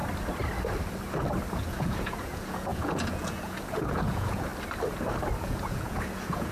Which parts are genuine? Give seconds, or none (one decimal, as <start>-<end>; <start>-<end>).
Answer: 0.0-1.5; 4.5-5.4